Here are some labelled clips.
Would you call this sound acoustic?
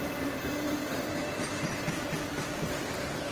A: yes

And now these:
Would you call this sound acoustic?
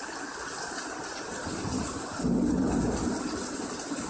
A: yes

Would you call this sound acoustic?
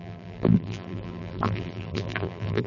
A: no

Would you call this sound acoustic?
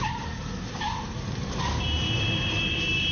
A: no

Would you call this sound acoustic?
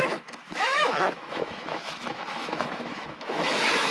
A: no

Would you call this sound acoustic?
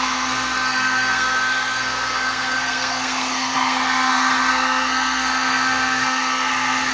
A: no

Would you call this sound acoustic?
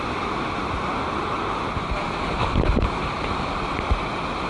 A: yes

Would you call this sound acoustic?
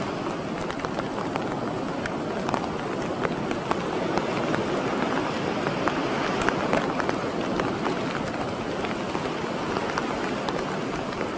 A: yes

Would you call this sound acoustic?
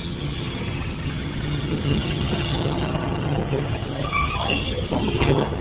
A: no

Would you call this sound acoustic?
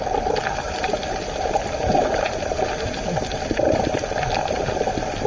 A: no